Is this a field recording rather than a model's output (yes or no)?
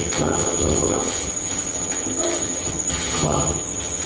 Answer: no